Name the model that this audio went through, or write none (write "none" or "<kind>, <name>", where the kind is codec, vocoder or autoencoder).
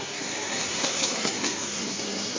codec, SNAC